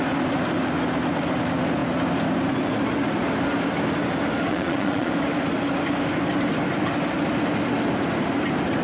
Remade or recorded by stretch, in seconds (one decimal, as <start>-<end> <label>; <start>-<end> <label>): 0.0-4.5 recorded; 4.5-5.1 remade; 5.1-8.8 recorded